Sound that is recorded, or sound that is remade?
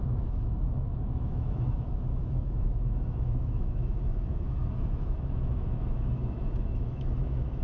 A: remade